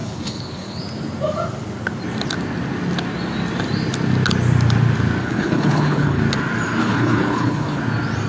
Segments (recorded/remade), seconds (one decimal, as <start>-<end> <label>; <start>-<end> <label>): 0.0-0.8 remade; 0.8-5.2 recorded; 5.2-6.2 remade; 6.2-6.8 recorded; 6.8-7.8 remade; 7.8-8.3 recorded